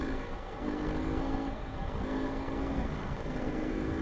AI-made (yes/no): yes